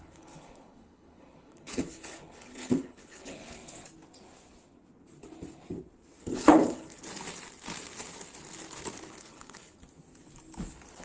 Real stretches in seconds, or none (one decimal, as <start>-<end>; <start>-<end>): 3.6-6.2; 7.0-9.2; 9.8-11.0